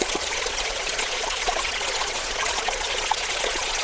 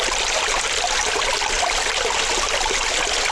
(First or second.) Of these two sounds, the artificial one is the first